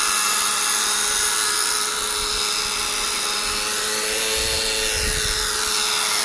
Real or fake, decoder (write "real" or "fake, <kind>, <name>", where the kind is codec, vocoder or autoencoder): real